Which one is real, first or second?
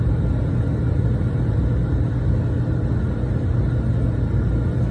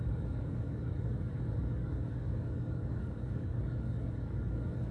first